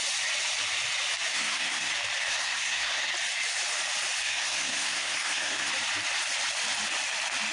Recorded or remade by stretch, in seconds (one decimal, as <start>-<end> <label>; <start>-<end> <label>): 0.0-1.3 recorded; 1.3-1.9 remade; 1.9-2.3 recorded; 2.3-3.1 remade; 3.1-4.2 recorded; 4.2-5.7 remade; 5.7-7.5 recorded